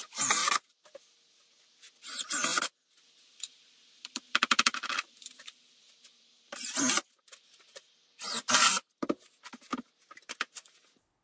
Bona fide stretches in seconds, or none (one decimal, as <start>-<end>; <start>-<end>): 0.4-1.6; 2.5-3.4